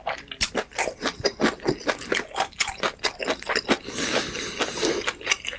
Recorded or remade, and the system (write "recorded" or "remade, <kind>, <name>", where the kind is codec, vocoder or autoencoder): recorded